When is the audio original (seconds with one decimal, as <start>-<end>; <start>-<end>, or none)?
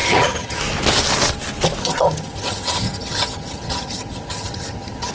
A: 0.6-1.8